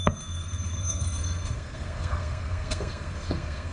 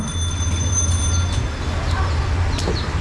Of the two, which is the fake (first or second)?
first